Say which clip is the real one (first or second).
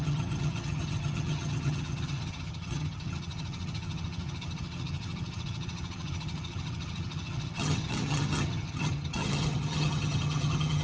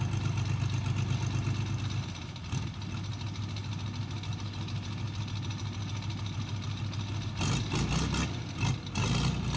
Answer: second